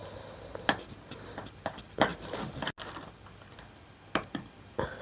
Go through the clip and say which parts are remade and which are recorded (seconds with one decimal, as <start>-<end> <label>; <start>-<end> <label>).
0.0-5.0 recorded